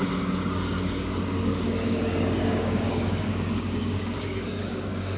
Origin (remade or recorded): remade